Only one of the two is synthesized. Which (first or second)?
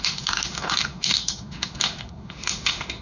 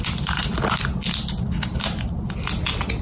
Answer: first